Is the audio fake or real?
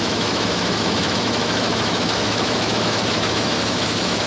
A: fake